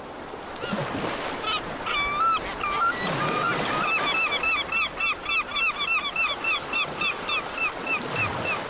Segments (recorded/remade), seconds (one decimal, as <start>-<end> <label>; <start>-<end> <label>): 0.0-8.7 recorded